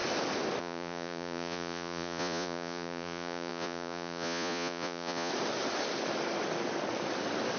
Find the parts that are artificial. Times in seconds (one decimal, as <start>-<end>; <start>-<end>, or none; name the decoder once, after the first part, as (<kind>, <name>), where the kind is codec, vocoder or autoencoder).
0.6-5.3 (vocoder, Vocos)